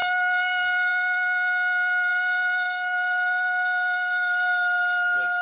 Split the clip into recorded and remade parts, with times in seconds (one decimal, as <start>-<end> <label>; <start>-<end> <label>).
0.0-0.9 remade; 0.9-2.1 recorded; 2.1-5.4 remade